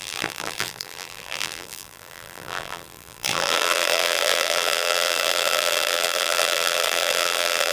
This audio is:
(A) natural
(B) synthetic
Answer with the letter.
B